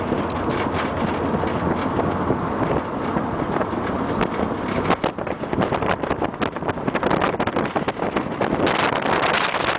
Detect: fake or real real